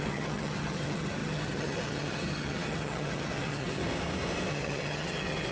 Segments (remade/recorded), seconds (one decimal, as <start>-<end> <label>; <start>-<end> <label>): 0.0-3.8 remade; 3.8-4.5 recorded; 4.5-5.5 remade